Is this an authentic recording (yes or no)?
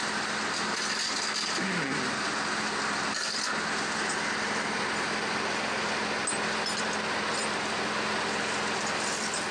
yes